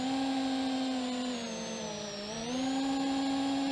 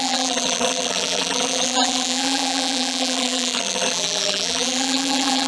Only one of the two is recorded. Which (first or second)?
first